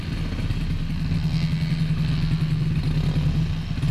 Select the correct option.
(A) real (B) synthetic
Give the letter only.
A